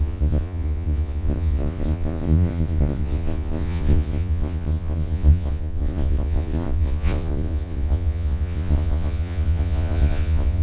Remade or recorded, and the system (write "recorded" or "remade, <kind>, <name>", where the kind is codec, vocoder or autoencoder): remade, vocoder, Vocos